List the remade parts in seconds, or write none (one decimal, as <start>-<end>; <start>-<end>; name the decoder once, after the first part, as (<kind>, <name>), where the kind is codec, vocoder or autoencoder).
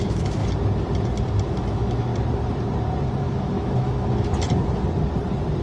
0.0-0.4 (autoencoder, DAC-VAE); 1.4-2.1; 3.2-4.3